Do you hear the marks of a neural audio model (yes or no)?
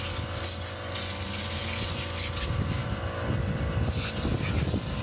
no